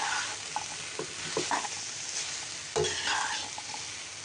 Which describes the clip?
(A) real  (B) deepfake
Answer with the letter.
A